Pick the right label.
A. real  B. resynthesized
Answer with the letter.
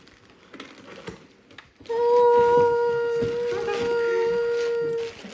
A